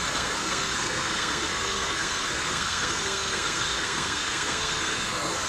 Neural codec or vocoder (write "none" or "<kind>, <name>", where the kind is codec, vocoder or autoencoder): codec, SNAC